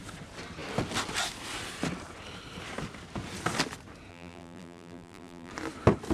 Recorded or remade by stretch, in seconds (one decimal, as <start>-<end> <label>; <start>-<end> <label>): 0.0-4.1 recorded; 4.1-5.5 remade; 5.5-6.1 recorded